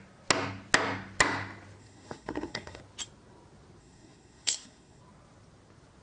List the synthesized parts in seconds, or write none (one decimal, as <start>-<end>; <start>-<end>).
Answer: 1.8-2.8; 3.8-5.0

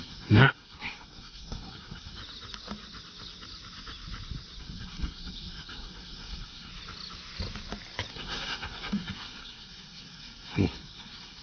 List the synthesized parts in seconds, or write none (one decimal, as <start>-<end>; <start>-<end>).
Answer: 0.0-2.2; 4.6-6.7; 8.1-11.4

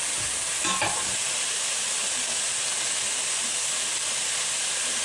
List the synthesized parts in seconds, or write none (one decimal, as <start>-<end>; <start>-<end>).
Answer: none

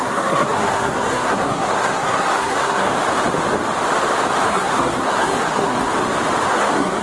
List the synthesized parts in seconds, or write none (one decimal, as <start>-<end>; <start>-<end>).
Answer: 0.0-2.9; 4.5-5.9; 6.5-7.0

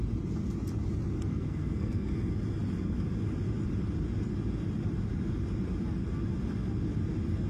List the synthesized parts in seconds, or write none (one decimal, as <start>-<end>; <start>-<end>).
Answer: 1.3-2.1

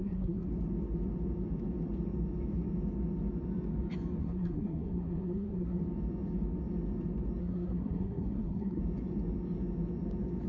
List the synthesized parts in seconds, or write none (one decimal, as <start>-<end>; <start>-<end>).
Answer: 0.0-0.5; 4.2-5.8; 7.4-8.8